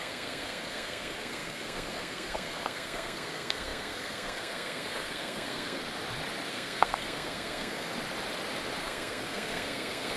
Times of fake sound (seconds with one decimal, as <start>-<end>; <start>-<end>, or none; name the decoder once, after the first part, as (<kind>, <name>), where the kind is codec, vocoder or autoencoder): 0.0-5.8 (codec, SNAC); 6.5-7.9; 8.8-10.2